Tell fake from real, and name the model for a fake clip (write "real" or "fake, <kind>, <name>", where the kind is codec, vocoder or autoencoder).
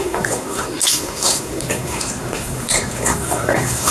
fake, codec, SNAC